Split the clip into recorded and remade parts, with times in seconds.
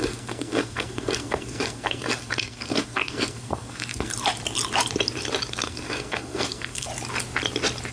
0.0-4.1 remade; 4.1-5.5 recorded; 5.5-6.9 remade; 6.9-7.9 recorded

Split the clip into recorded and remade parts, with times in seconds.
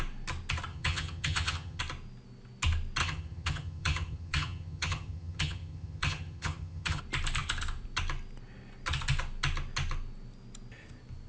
0.0-0.7 recorded; 0.7-1.8 remade; 1.8-3.0 recorded; 3.0-7.0 remade; 7.0-11.3 recorded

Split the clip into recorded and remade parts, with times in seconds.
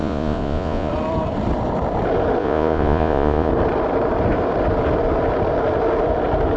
0.0-0.9 remade; 0.9-2.4 recorded; 2.4-3.5 remade; 3.5-6.6 recorded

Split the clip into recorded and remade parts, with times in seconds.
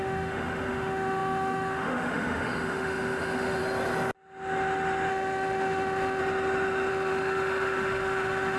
0.0-3.6 remade; 3.6-5.1 recorded; 5.1-6.2 remade; 6.2-6.9 recorded; 6.9-8.6 remade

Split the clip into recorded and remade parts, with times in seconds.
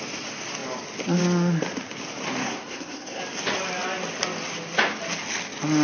0.0-2.4 recorded; 2.4-3.2 remade; 3.2-5.8 recorded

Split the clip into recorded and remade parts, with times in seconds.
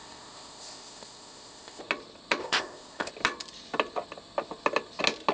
0.0-1.8 remade; 1.8-2.4 recorded; 2.4-3.1 remade; 3.1-5.3 recorded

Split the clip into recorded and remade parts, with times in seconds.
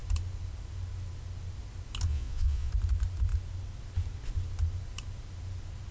0.0-2.1 recorded; 2.1-2.7 remade; 2.7-5.9 recorded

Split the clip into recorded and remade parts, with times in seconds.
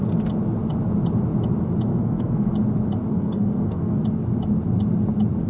0.0-1.9 recorded; 1.9-2.5 remade; 2.5-3.1 recorded; 3.1-4.0 remade; 4.0-5.5 recorded